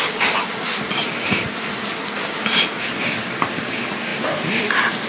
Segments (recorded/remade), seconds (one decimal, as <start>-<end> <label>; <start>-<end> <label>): 0.0-5.1 recorded